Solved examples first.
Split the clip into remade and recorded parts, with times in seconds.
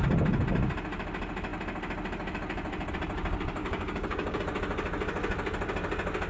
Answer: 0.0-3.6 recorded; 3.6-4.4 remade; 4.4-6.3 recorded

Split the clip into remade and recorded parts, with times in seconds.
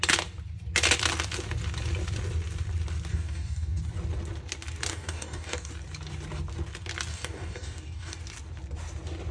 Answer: 0.0-3.1 recorded; 3.1-3.8 remade; 3.8-4.9 recorded; 4.9-5.7 remade; 5.7-7.1 recorded; 7.1-8.2 remade; 8.2-9.3 recorded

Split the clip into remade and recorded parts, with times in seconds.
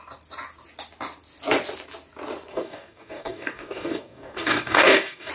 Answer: 0.0-2.5 recorded; 2.5-5.3 remade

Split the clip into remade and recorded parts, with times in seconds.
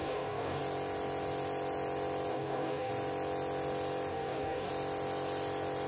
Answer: 0.0-0.6 remade; 0.6-2.3 recorded; 2.3-2.9 remade; 2.9-4.1 recorded; 4.1-4.7 remade; 4.7-5.9 recorded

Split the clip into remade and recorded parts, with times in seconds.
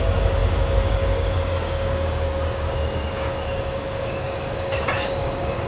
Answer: 0.0-5.7 remade